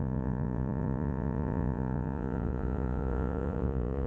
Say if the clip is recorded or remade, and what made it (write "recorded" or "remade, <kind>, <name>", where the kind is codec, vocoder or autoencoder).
remade, vocoder, Vocos